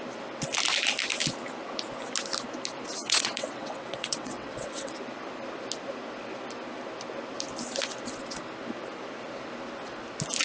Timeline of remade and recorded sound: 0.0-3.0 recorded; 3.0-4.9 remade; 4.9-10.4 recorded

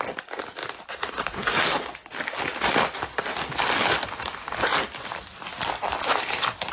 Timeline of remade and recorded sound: 0.0-6.7 recorded

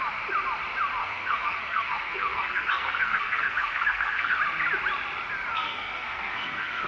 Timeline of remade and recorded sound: 0.0-1.0 recorded; 1.0-4.4 remade; 4.4-5.5 recorded; 5.5-6.9 remade